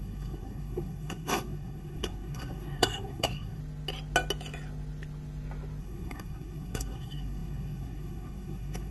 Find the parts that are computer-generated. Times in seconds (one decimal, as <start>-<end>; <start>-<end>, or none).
0.0-3.6; 5.8-8.9